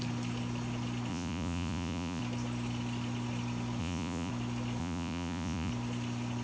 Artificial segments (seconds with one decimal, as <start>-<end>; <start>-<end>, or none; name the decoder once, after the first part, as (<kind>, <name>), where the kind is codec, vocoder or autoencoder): 1.1-2.2 (vocoder, Vocos); 3.8-4.3; 4.8-5.7